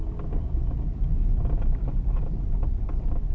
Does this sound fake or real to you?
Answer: real